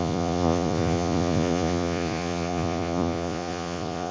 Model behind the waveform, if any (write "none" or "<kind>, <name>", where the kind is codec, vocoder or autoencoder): vocoder, Vocos